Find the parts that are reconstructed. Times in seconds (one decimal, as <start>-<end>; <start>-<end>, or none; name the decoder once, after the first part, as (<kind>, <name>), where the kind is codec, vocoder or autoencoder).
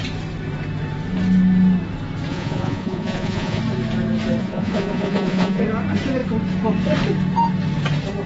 2.3-3.6 (vocoder, Vocos); 4.4-5.6